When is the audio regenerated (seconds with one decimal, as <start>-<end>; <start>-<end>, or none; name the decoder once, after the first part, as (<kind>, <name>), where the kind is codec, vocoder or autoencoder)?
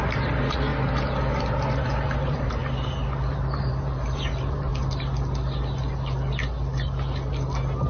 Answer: 0.0-0.7 (vocoder, BigVGAN v2); 1.8-2.6; 3.3-4.7